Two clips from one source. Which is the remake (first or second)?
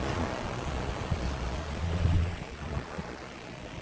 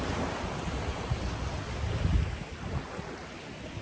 first